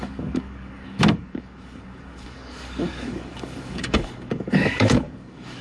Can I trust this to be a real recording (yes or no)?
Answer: no